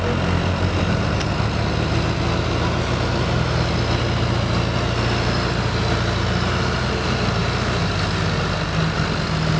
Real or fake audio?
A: real